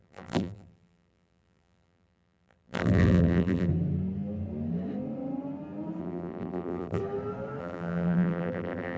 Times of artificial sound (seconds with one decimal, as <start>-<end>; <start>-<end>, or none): 0.0-3.7; 6.0-7.0; 7.6-9.0